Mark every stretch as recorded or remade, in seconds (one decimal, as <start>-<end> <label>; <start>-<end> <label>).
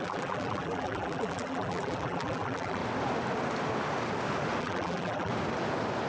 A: 0.0-2.8 remade; 2.8-4.6 recorded; 4.6-5.3 remade; 5.3-6.1 recorded